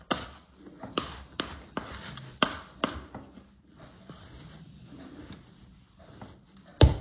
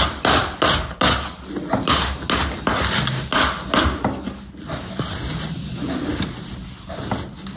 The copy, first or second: first